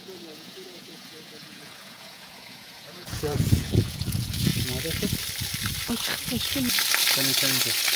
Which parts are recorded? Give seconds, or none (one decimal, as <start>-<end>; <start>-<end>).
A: 4.5-8.0